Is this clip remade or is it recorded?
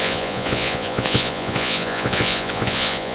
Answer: remade